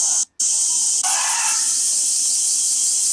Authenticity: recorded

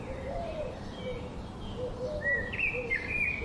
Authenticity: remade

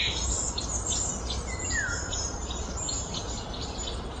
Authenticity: recorded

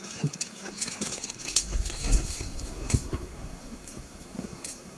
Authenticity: remade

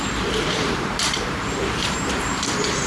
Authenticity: remade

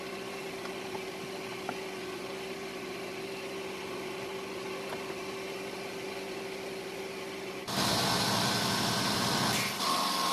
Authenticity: recorded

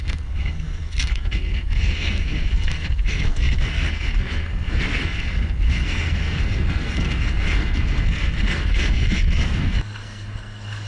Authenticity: remade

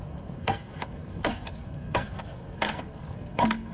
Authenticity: remade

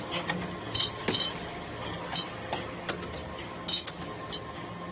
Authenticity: recorded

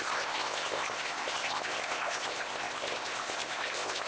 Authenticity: remade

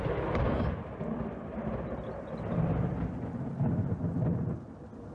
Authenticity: recorded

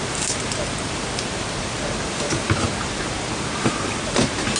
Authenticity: remade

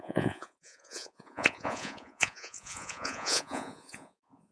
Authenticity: remade